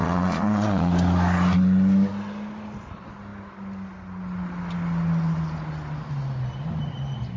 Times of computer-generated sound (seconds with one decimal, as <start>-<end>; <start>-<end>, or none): 0.0-0.9